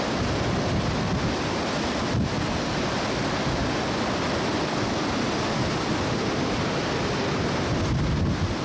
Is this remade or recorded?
recorded